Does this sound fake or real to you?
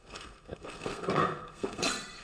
fake